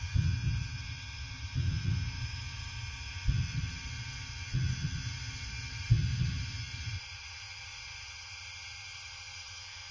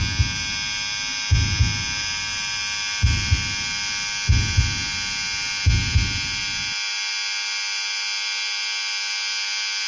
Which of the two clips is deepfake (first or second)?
first